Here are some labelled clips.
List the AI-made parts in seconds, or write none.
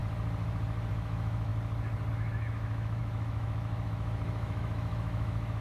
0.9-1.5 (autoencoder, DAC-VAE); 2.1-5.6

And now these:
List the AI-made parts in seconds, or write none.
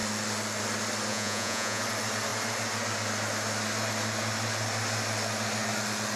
1.1-1.8 (vocoder, Vocos)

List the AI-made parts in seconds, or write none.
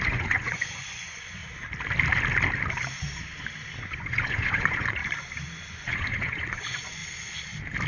0.0-1.4 (vocoder, Vocos); 3.8-5.0; 5.6-7.0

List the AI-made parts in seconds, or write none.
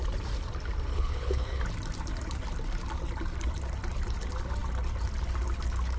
0.9-1.6 (codec, HILCodec)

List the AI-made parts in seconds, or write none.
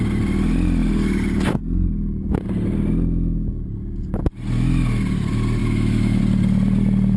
5.6-6.2 (autoencoder, DAC-VAE)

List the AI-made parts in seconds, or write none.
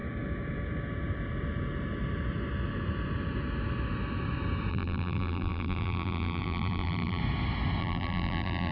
4.7-7.2 (vocoder, BigVGAN v2); 7.8-8.7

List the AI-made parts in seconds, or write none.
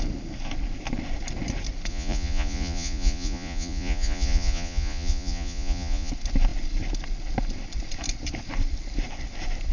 1.9-6.1 (vocoder, Vocos)